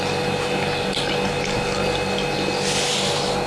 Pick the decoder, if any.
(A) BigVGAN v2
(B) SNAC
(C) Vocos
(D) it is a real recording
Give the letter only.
D